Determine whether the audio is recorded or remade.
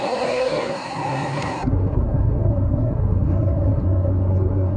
remade